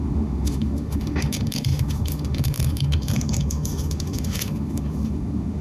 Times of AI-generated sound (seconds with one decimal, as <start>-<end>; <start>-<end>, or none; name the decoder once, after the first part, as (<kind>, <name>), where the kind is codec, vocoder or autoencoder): 0.0-5.6 (autoencoder, DAC-VAE)